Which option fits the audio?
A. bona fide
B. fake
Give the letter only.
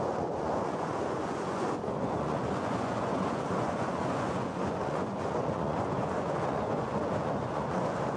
B